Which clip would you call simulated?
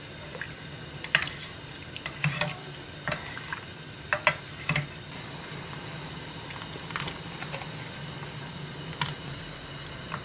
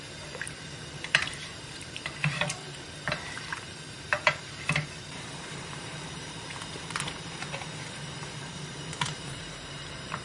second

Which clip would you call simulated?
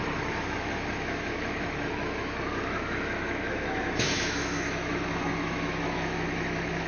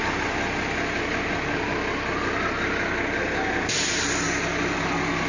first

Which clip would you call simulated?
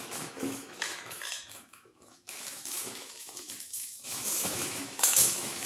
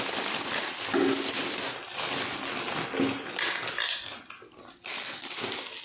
first